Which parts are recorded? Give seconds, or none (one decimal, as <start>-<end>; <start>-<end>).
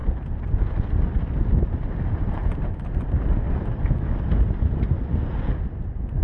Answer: 3.7-6.2